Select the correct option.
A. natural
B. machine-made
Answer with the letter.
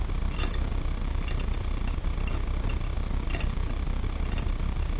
A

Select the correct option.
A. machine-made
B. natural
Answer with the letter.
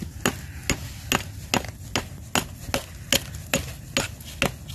B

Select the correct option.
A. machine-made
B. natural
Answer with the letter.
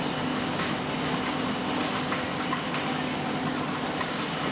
B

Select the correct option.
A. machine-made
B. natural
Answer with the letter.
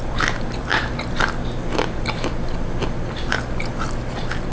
B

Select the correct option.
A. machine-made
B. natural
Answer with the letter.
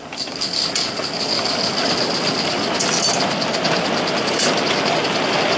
B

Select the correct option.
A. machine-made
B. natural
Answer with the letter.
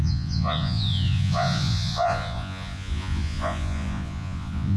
A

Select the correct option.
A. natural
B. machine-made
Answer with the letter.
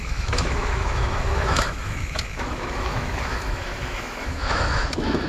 B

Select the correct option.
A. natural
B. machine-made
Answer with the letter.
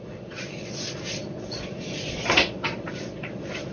B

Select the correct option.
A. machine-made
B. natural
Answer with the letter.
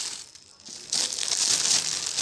B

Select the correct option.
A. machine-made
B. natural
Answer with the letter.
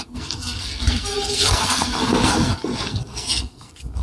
A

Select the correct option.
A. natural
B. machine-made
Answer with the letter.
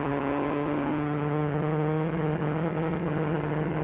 B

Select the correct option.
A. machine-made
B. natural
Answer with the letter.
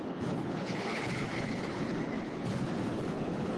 A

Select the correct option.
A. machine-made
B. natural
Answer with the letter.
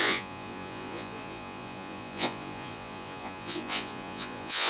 A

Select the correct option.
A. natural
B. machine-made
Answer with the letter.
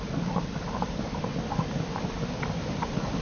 A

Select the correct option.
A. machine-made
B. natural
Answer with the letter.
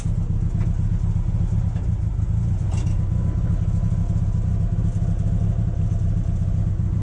B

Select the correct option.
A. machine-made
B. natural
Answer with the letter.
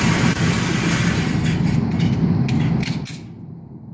B